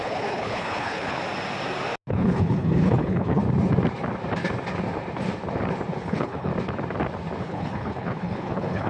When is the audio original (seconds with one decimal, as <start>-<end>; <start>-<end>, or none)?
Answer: 1.2-2.1; 3.4-6.0; 6.5-7.4